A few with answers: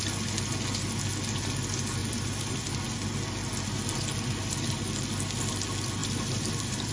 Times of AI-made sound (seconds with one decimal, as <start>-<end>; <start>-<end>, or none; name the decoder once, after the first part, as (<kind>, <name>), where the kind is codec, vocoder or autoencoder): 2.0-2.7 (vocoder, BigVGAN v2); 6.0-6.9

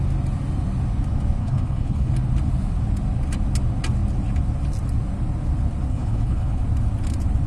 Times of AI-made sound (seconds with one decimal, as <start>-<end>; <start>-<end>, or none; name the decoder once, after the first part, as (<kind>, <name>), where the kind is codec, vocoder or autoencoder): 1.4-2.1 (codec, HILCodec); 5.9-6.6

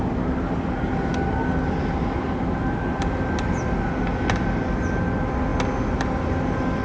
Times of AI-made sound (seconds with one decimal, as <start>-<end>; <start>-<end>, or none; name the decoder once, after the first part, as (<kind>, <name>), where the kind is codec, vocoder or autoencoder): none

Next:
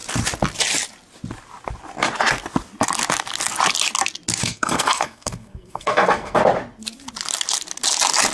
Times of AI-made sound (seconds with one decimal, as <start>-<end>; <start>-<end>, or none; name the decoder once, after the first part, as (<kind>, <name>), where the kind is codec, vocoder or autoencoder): 4.4-6.4 (codec, SNAC)